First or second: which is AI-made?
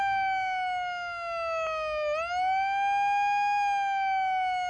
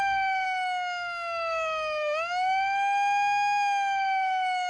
second